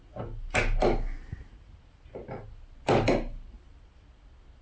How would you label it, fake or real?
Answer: real